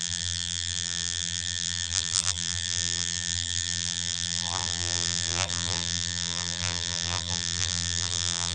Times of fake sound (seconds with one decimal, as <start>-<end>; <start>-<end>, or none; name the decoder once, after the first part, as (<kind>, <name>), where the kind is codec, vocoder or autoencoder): 0.0-8.5 (vocoder, BigVGAN v2)